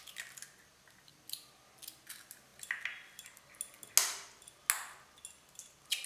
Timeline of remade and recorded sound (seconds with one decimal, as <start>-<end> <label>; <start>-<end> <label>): 0.0-6.1 recorded